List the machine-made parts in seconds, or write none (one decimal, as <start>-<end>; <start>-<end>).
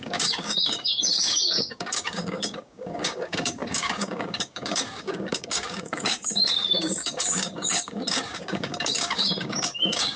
0.0-10.2